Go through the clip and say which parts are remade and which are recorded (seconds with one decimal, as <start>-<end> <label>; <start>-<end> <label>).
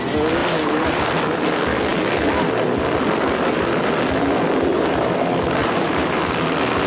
0.0-0.4 recorded; 0.4-1.0 remade; 1.0-5.6 recorded; 5.6-6.2 remade; 6.2-6.9 recorded